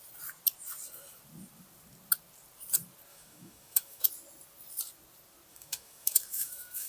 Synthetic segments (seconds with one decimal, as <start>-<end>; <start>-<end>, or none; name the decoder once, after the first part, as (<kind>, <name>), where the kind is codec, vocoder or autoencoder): 3.1-4.1 (autoencoder, DAC-VAE); 5.5-6.9